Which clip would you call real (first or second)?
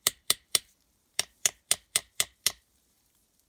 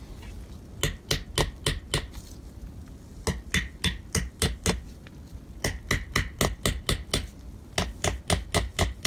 second